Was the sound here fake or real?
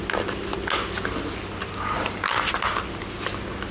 real